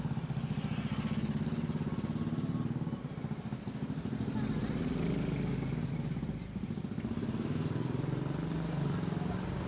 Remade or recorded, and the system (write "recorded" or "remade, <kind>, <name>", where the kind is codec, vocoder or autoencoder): recorded